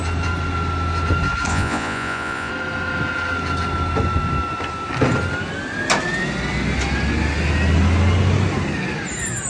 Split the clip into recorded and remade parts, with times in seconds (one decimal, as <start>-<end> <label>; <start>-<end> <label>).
0.0-1.5 recorded; 1.5-2.5 remade; 2.5-9.5 recorded